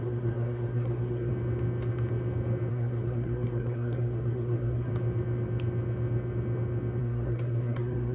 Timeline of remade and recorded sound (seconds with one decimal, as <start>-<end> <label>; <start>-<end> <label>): 0.0-1.3 remade; 1.3-2.7 recorded; 2.7-4.9 remade; 4.9-7.0 recorded; 7.0-8.1 remade